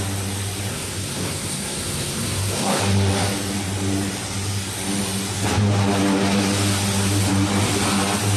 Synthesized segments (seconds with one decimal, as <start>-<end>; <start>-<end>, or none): 0.7-2.8